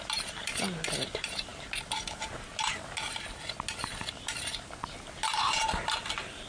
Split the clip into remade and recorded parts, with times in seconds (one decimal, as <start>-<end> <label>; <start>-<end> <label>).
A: 0.0-6.5 recorded